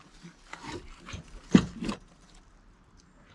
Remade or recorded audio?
remade